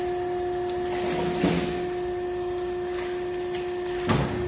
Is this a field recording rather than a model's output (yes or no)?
yes